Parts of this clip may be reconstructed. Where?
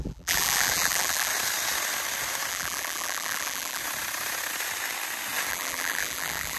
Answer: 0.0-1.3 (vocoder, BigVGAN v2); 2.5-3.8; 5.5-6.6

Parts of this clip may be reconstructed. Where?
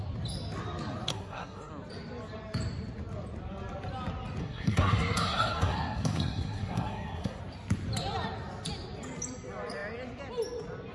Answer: 1.1-1.7 (codec, SNAC); 4.4-7.4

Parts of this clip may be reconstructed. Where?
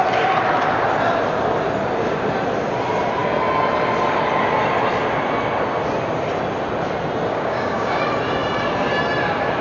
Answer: 7.3-8.0 (codec, DAC)